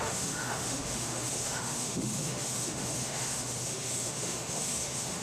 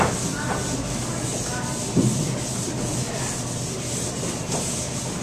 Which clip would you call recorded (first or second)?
second